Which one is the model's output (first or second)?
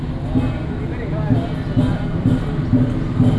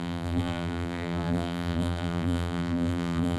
second